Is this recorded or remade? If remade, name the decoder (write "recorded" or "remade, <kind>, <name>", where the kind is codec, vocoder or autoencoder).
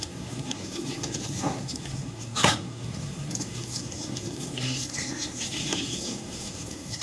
remade, codec, SNAC